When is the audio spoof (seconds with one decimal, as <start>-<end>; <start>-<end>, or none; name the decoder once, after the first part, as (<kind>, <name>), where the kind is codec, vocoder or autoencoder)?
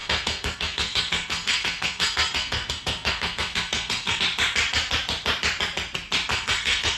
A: 0.0-4.2 (codec, SNAC); 6.3-7.0